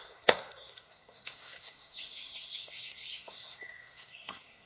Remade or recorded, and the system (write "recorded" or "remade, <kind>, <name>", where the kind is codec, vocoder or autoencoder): remade, codec, SNAC